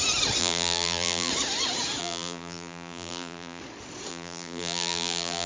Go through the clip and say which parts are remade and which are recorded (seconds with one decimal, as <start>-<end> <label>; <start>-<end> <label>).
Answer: 0.0-0.4 recorded; 0.4-1.3 remade; 1.3-2.0 recorded; 2.0-3.6 remade; 3.6-4.1 recorded; 4.1-5.5 remade